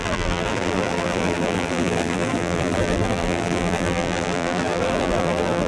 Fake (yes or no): yes